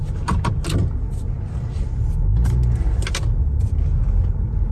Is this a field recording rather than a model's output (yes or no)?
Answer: yes